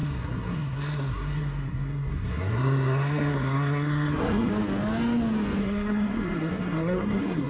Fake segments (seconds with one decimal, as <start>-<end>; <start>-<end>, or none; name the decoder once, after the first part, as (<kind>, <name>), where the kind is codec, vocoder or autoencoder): 0.0-4.5 (codec, SNAC); 5.6-7.5